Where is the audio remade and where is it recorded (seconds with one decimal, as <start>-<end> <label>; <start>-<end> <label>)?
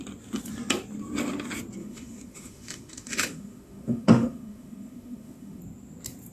0.0-1.8 recorded; 1.8-5.6 remade; 5.6-6.3 recorded